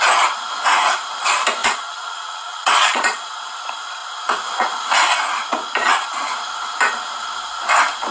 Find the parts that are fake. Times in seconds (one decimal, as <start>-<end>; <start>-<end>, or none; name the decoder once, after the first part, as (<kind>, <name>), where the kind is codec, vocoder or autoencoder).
1.6-3.3 (vocoder, Vocos); 5.5-6.3